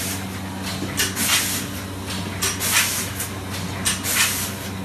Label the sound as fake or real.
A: real